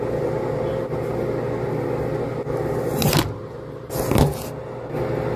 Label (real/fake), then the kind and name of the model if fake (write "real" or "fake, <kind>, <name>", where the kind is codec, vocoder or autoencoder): real